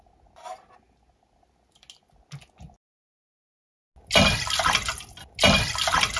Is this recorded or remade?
recorded